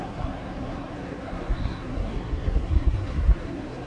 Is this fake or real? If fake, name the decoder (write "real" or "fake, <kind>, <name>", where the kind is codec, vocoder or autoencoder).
fake, codec, SNAC